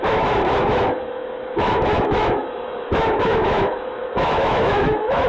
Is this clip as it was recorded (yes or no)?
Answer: no